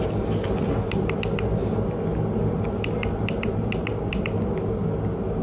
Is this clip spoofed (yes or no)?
no